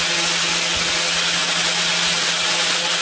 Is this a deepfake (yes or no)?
no